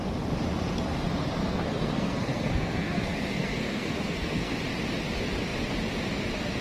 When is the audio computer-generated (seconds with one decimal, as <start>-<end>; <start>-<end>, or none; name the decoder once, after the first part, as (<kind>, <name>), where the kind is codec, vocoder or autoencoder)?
1.4-4.5 (codec, SNAC)